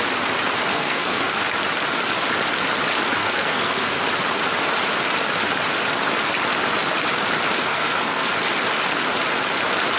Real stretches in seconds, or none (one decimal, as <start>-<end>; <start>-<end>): 0.0-0.7; 1.4-3.2; 4.0-7.7; 8.3-10.0